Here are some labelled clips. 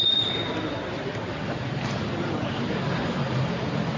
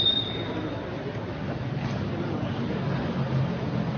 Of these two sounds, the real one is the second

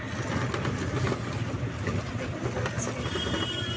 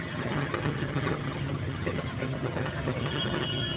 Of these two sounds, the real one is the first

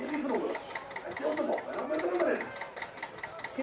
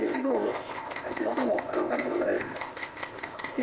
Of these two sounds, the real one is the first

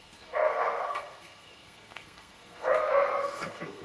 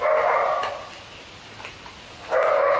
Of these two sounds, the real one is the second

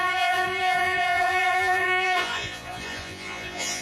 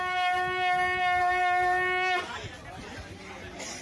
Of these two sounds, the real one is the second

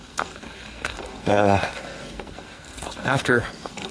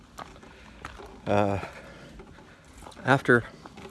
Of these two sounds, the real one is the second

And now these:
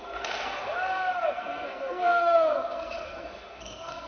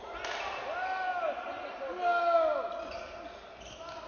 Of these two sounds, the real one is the second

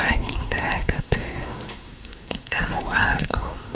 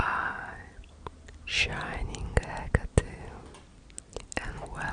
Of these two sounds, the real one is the second